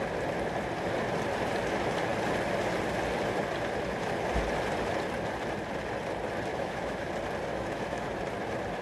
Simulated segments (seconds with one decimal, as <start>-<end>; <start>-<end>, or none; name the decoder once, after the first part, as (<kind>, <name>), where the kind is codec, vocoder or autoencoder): 6.5-7.1 (autoencoder, DAC-VAE); 7.5-8.2